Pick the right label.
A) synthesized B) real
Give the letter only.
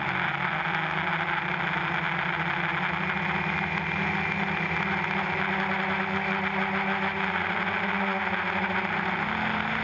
B